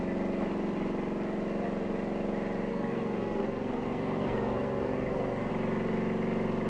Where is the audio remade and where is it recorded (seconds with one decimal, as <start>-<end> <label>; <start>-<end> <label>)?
0.0-2.7 recorded; 2.7-5.5 remade; 5.5-6.7 recorded

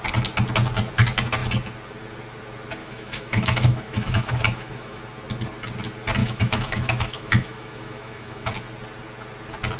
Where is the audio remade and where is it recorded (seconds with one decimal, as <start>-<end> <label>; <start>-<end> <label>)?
0.0-2.8 recorded; 2.8-5.0 remade; 5.0-6.2 recorded; 6.2-8.5 remade; 8.5-9.8 recorded

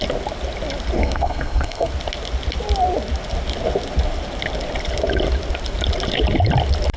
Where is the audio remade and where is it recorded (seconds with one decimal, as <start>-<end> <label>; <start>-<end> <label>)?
0.0-1.0 recorded; 1.0-1.9 remade; 1.9-7.0 recorded

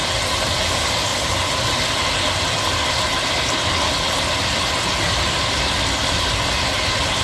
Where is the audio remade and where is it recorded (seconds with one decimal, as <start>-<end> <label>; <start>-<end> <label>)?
0.0-7.2 recorded